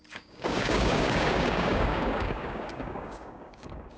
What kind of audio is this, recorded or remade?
remade